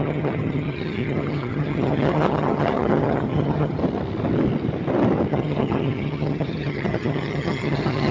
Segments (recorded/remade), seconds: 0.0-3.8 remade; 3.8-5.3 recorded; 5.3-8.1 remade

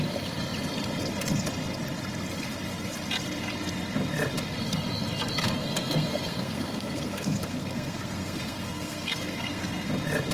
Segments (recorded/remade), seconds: 0.0-5.4 recorded; 5.4-9.9 remade; 9.9-10.3 recorded

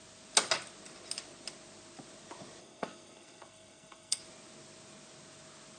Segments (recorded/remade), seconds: 0.0-2.6 recorded; 2.6-4.2 remade; 4.2-5.8 recorded

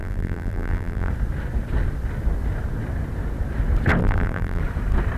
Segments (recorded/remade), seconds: 0.0-1.1 remade; 1.1-4.0 recorded; 4.0-4.6 remade; 4.6-5.2 recorded

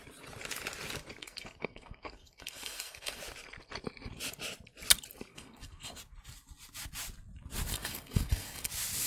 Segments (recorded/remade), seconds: 0.0-1.2 recorded; 1.2-3.2 remade; 3.2-5.3 recorded; 5.3-6.0 remade; 6.0-7.7 recorded; 7.7-8.7 remade; 8.7-9.1 recorded

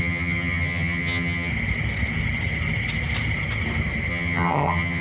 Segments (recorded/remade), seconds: 0.0-1.5 remade; 1.5-4.1 recorded; 4.1-5.0 remade